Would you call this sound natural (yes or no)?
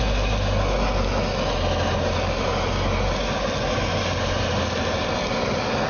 yes